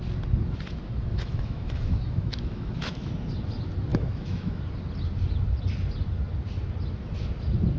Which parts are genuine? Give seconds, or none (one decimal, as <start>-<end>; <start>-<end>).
0.0-1.1; 3.1-3.9; 4.6-7.8